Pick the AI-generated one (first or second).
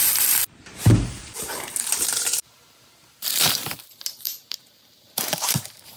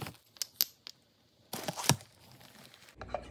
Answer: first